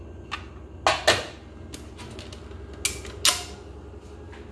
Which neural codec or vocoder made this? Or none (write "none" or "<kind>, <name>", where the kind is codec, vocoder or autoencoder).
none